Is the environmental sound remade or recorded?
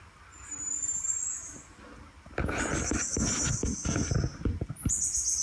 recorded